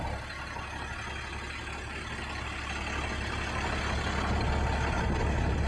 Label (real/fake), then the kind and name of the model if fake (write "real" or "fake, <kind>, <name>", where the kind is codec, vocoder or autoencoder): real